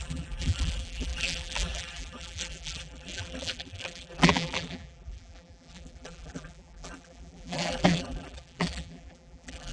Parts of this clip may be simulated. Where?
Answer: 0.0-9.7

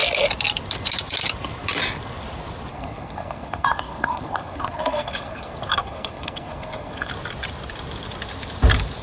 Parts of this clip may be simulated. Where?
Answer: 2.7-7.1

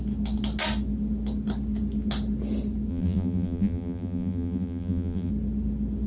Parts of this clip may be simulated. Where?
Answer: 2.9-5.3

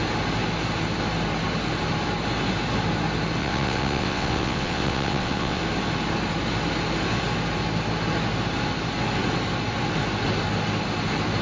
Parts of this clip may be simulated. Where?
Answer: 3.4-5.6

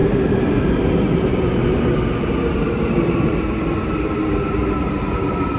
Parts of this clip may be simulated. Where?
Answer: none

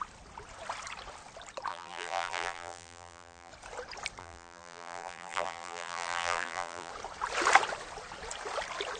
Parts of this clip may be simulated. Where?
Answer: 1.7-3.5; 4.2-6.9